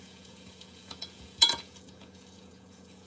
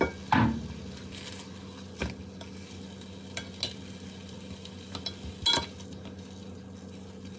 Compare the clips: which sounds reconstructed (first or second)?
first